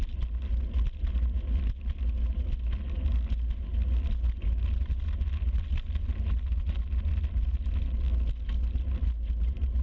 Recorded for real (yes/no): yes